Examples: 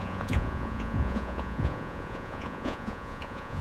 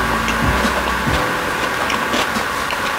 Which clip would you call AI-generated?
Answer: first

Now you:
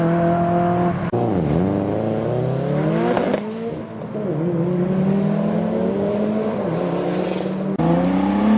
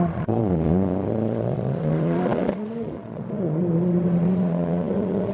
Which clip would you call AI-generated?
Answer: second